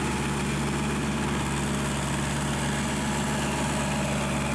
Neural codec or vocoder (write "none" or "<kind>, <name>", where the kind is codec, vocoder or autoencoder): none